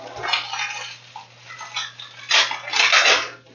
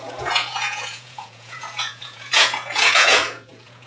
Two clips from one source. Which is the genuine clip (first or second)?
first